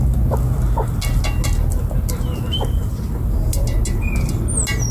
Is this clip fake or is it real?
real